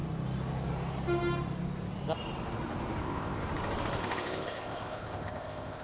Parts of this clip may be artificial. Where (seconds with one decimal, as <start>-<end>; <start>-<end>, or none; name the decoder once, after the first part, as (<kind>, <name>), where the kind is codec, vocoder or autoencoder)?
3.0-3.4 (codec, ZipCodec); 4.0-5.8